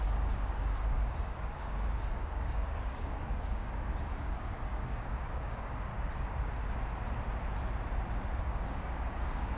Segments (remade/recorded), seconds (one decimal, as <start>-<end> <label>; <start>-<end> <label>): 0.0-5.9 remade; 5.9-8.4 recorded; 8.4-9.6 remade